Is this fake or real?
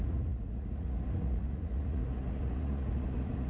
fake